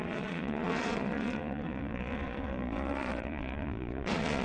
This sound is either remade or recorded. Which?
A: remade